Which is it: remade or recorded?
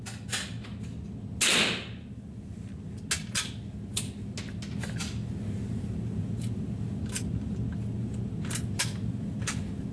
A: recorded